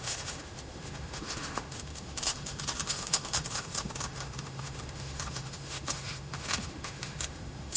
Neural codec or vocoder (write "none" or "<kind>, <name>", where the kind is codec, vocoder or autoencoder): autoencoder, DAC-VAE